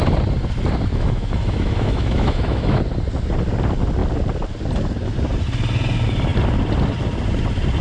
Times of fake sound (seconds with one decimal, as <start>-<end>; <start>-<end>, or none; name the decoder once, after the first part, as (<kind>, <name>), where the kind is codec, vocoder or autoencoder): 0.9-2.8 (autoencoder, DAC-VAE)